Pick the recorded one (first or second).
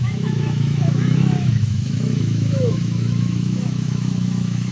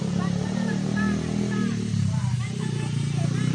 second